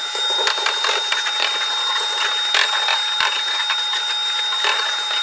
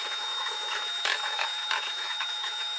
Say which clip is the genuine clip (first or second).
first